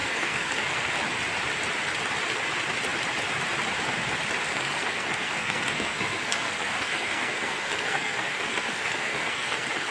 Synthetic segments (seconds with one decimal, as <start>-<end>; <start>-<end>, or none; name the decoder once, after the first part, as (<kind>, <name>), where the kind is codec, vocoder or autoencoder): 0.0-0.9 (codec, SNAC); 4.5-9.9